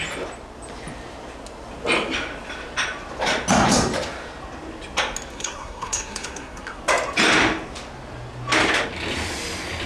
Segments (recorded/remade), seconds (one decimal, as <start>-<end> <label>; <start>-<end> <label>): 0.0-5.3 recorded; 5.3-6.8 remade; 6.8-9.9 recorded